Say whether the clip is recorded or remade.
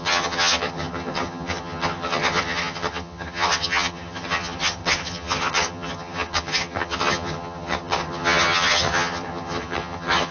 remade